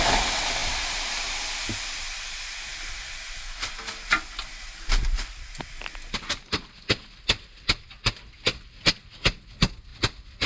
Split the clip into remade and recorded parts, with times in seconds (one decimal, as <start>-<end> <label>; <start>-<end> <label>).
0.0-0.6 recorded; 0.6-1.4 remade; 1.4-10.5 recorded